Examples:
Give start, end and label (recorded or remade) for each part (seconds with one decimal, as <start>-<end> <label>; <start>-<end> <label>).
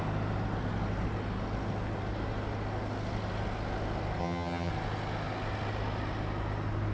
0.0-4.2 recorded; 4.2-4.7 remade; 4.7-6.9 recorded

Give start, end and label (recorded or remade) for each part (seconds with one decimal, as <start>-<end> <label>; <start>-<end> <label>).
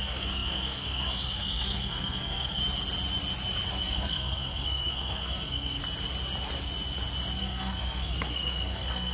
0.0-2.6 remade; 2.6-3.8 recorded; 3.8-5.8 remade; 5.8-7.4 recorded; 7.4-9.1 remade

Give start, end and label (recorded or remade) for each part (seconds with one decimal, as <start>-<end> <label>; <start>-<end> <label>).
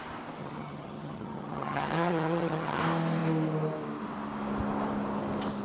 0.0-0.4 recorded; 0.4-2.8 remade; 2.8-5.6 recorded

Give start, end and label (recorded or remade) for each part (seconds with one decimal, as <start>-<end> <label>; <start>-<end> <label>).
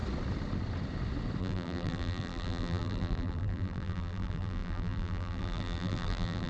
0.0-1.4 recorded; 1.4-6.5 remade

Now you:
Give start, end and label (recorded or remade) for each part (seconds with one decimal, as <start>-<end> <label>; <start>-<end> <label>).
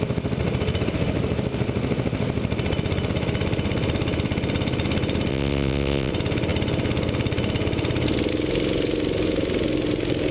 0.0-5.3 recorded; 5.3-6.1 remade; 6.1-10.3 recorded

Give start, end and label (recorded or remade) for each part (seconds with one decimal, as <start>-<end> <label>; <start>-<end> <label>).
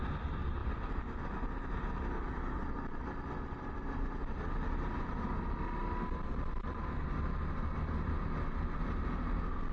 0.0-9.7 recorded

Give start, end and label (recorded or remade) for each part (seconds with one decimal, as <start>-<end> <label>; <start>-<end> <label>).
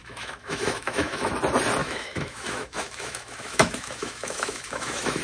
0.0-1.3 remade; 1.3-1.8 recorded; 1.8-5.2 remade